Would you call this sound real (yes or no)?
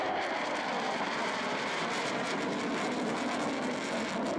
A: no